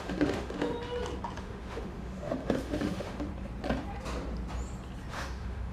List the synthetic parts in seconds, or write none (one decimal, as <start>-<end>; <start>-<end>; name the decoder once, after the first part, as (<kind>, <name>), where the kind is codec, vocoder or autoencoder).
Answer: 0.0-0.7 (autoencoder, DAC-VAE); 1.4-3.3; 5.1-5.7